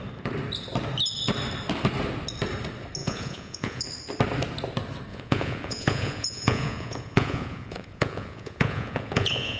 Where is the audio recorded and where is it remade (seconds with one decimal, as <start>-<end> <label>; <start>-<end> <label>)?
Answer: 0.0-3.0 recorded; 3.0-3.8 remade; 3.8-5.1 recorded; 5.1-9.6 remade